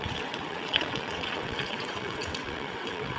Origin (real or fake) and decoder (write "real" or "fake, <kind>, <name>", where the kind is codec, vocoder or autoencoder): fake, vocoder, WaveNeXt